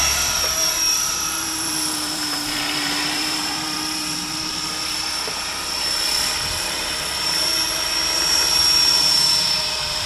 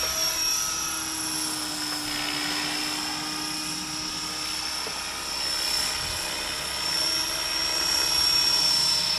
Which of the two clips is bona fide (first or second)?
second